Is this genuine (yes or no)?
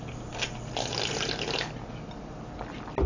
yes